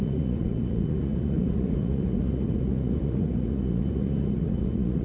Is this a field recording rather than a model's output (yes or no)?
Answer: no